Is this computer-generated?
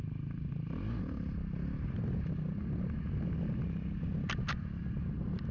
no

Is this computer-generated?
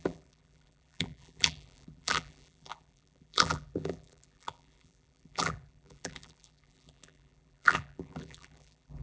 yes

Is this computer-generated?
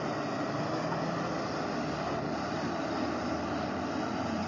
no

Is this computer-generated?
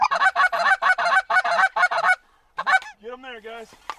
no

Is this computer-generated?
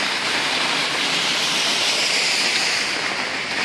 no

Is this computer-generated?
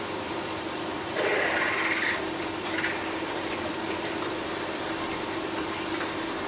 yes